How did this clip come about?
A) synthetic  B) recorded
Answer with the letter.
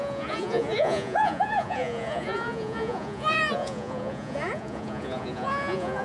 A